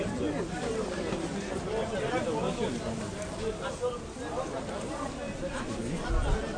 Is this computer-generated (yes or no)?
no